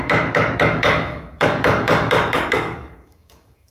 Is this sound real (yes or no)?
no